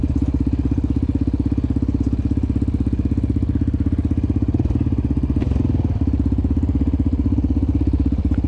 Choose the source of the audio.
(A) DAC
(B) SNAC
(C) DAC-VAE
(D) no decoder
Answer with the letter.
D